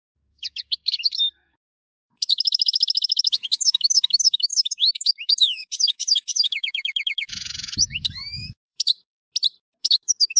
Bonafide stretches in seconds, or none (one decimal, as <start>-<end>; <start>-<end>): 9.2-9.8